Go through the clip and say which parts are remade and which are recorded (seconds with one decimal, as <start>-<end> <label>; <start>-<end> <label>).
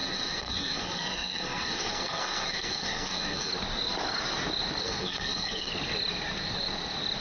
0.0-3.5 remade; 3.5-4.8 recorded; 4.8-5.7 remade; 5.7-7.2 recorded